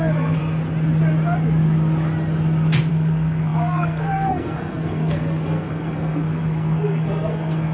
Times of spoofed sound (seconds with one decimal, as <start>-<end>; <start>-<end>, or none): 0.0-0.4; 2.9-7.7